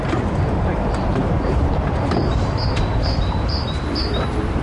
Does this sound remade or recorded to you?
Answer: remade